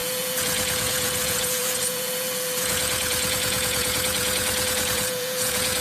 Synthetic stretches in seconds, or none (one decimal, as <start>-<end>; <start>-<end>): 0.0-5.8